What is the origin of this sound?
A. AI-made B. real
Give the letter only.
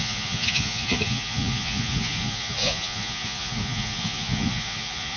A